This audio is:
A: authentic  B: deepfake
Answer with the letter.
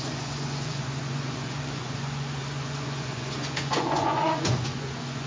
B